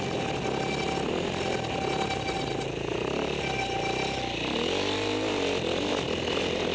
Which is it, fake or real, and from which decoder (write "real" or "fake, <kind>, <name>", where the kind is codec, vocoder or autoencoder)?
real